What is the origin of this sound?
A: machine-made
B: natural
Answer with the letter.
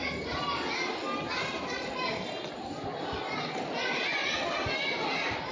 B